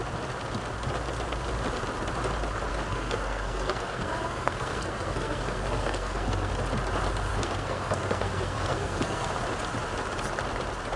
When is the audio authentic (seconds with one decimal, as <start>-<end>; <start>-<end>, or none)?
0.0-2.7; 6.5-7.3; 9.3-11.0